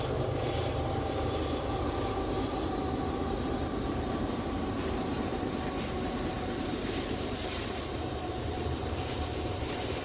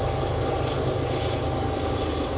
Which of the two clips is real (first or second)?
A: second